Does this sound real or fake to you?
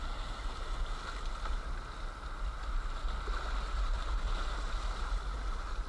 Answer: real